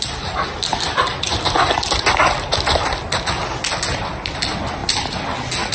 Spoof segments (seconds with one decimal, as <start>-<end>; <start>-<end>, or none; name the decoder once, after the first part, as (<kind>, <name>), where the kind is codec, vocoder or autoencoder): none